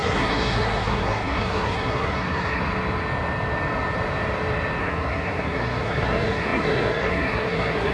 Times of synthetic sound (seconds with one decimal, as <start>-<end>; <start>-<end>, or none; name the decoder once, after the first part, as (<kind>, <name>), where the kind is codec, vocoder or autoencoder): 0.0-2.6 (codec, SNAC); 4.8-7.9